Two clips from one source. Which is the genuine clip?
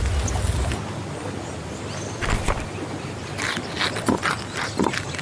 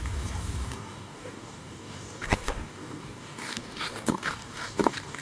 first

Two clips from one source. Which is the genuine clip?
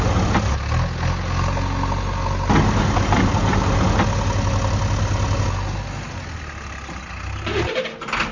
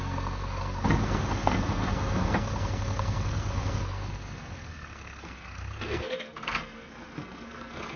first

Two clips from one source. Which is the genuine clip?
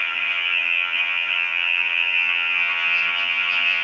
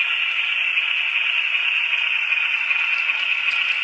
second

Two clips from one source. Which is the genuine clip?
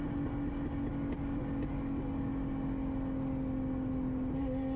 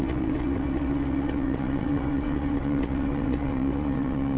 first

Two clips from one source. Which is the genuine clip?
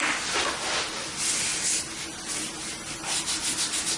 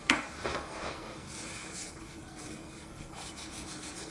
first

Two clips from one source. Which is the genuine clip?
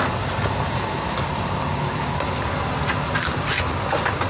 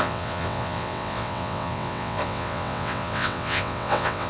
first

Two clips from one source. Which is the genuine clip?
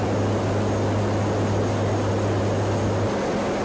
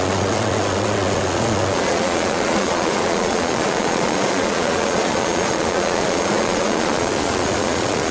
first